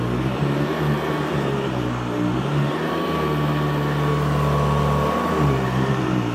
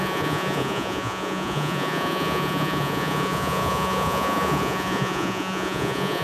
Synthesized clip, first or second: second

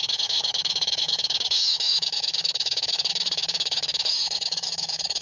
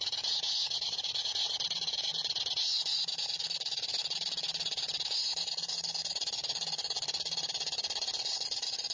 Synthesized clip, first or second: first